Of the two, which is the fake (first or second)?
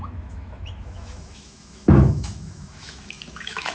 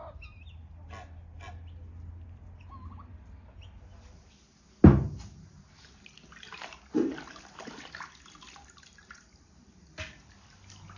first